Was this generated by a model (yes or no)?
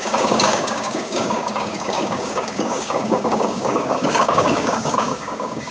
yes